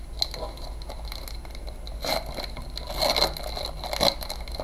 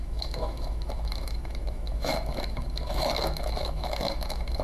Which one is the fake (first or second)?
second